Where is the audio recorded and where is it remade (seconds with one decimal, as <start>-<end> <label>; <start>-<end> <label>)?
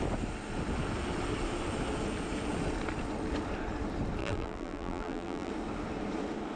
0.0-4.2 recorded; 4.2-5.5 remade; 5.5-6.6 recorded